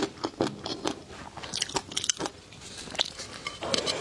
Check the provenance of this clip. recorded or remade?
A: recorded